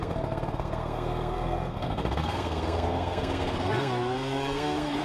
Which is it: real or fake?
fake